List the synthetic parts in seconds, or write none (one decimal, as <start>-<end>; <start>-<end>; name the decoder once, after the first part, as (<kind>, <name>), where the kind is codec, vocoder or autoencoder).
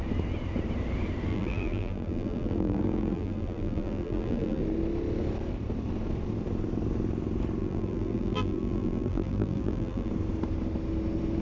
1.3-4.6 (vocoder, BigVGAN v2); 7.6-10.1